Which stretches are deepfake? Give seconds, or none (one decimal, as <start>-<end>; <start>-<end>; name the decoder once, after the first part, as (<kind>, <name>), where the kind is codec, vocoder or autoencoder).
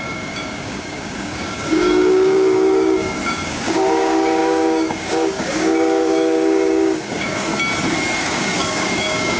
0.0-7.5 (codec, DAC); 8.2-9.4